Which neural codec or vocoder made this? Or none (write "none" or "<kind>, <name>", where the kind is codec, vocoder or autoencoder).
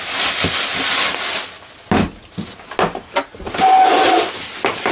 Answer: none